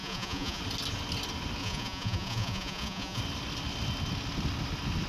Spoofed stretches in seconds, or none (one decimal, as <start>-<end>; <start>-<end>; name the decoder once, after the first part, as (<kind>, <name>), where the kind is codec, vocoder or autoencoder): 0.0-0.6 (vocoder, Vocos); 1.6-3.2